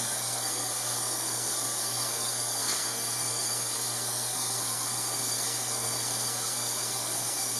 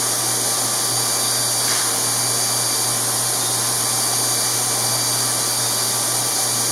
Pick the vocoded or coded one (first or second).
first